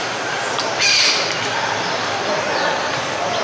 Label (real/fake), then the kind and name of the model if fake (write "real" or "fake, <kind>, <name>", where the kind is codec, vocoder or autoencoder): real